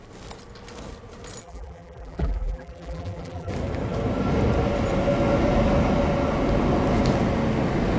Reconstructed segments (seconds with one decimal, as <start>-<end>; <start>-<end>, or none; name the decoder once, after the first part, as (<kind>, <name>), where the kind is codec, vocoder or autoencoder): 1.4-3.5 (vocoder, BigVGAN v2)